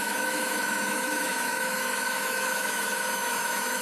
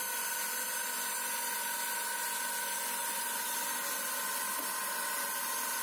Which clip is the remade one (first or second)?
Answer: first